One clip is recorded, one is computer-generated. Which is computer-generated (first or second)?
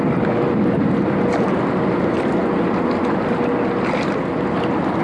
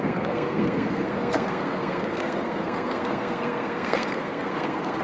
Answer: second